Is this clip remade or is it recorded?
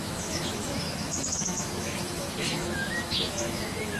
remade